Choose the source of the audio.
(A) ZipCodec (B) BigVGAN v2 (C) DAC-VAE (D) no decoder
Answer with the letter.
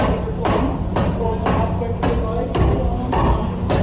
D